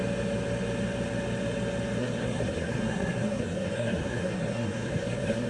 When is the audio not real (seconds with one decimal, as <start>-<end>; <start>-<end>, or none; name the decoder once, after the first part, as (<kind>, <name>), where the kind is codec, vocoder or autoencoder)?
2.0-5.5 (codec, SNAC)